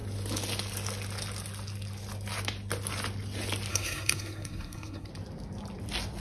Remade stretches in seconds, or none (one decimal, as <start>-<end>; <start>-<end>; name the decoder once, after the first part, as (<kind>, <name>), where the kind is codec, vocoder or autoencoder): 3.7-5.1 (codec, SNAC)